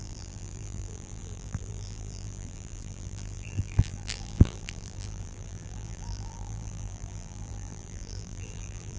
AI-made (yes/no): yes